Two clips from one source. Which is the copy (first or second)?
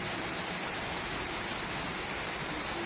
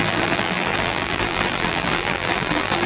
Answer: second